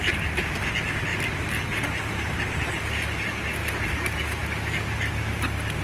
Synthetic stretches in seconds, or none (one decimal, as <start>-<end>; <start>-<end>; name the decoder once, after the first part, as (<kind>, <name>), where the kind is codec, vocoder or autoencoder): none